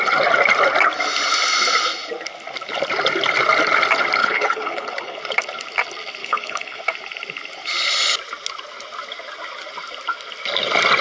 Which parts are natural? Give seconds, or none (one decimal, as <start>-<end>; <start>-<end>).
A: 0.0-4.2; 5.2-6.2; 6.8-11.0